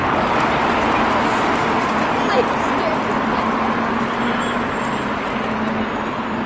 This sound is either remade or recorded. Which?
recorded